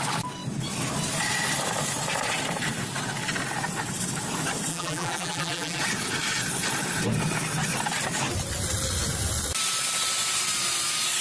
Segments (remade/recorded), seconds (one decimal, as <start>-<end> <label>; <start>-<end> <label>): 0.0-4.7 recorded; 4.7-5.8 remade; 5.8-11.2 recorded